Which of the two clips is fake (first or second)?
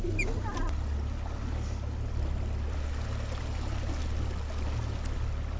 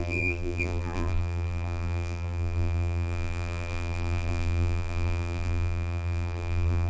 second